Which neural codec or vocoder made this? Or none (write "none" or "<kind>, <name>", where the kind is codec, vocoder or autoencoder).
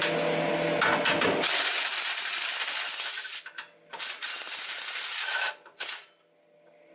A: none